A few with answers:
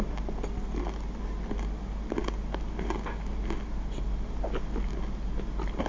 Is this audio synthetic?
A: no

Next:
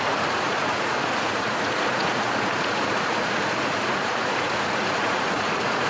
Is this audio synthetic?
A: yes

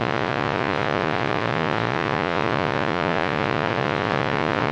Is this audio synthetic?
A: yes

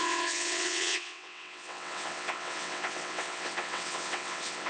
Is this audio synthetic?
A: yes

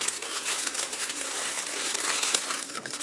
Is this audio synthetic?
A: yes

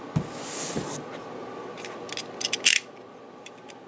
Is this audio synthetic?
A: no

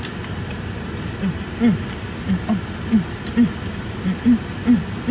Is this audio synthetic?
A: no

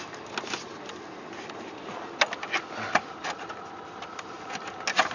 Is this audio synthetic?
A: no